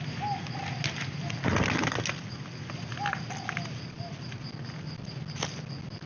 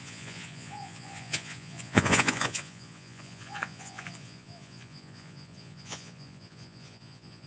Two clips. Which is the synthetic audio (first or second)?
second